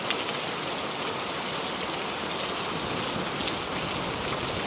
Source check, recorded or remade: recorded